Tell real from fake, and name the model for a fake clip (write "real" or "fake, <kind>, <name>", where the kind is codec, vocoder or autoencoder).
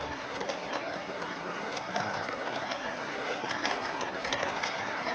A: fake, codec, SNAC